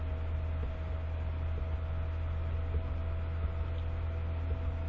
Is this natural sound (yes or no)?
yes